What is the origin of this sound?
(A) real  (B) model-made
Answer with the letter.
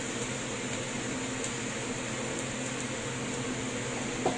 A